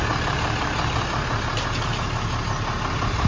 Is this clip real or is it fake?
real